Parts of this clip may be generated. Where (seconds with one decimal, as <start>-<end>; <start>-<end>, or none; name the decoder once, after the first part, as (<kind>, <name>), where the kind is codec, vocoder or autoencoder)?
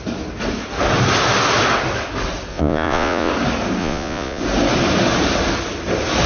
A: 2.5-3.3 (vocoder, Vocos); 3.8-4.4